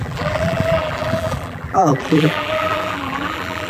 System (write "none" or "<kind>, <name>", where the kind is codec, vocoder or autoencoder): vocoder, BigVGAN v2